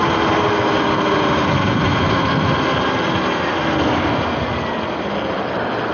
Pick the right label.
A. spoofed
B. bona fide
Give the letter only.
B